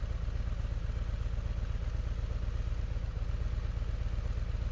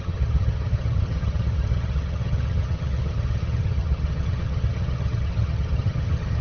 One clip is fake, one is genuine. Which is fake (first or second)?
second